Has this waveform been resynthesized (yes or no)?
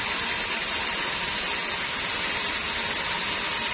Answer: no